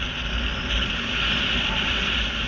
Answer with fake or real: real